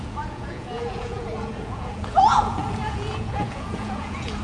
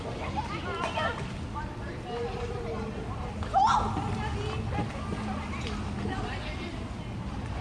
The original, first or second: second